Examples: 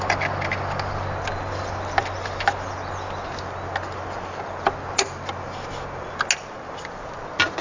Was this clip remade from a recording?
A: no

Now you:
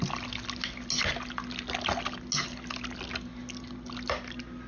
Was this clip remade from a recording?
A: no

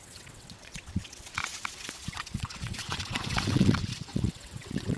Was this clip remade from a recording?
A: yes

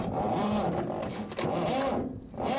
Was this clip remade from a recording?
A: no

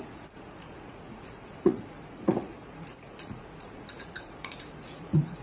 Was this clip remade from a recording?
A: yes